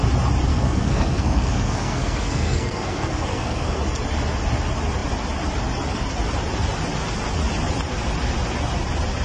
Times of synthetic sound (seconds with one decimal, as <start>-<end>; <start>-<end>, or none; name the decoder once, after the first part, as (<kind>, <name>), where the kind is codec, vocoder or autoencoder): 0.5-3.8 (codec, SNAC)